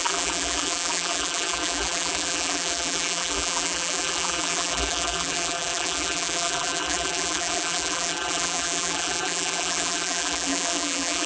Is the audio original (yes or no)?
no